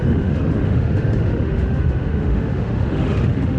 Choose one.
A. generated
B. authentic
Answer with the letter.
A